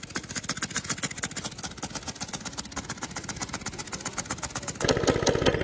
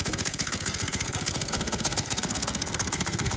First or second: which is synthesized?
second